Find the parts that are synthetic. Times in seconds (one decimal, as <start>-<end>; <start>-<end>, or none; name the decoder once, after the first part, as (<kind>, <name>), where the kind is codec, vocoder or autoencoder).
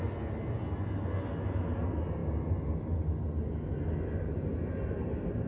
none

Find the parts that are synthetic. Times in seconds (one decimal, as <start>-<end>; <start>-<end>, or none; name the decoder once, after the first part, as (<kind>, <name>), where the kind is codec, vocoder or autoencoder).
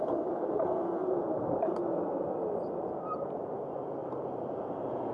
1.0-1.7 (vocoder, BigVGAN v2); 4.0-4.5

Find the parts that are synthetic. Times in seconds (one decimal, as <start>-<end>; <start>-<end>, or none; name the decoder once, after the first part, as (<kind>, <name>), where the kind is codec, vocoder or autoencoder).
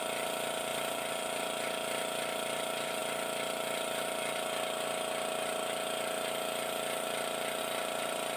0.7-1.4 (vocoder, BigVGAN v2)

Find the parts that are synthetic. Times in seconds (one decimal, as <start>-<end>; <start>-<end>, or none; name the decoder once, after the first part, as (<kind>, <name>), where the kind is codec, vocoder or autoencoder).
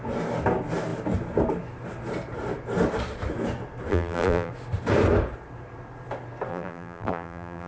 3.9-4.5 (vocoder, BigVGAN v2); 6.5-7.7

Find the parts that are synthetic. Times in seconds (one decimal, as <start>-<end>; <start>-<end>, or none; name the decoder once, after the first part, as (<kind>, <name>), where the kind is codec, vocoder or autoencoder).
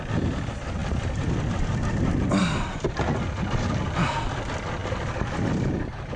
2.4-3.2 (vocoder, BigVGAN v2); 4.8-6.2